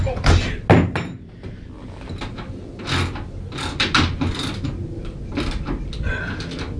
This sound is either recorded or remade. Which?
recorded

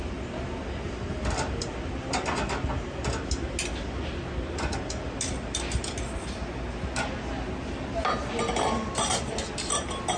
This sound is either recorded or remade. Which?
recorded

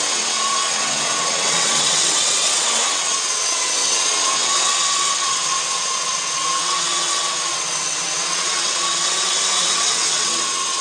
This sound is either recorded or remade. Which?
remade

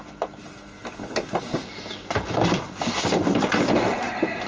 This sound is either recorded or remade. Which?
recorded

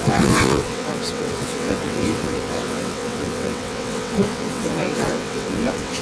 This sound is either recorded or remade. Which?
remade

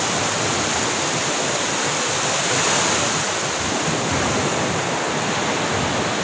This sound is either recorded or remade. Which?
recorded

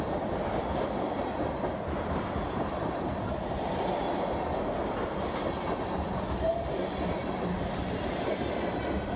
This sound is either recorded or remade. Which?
recorded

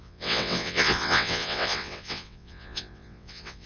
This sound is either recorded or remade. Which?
remade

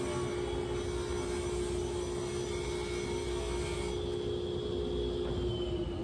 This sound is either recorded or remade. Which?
recorded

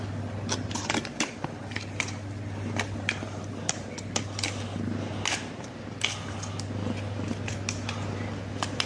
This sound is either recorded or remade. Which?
recorded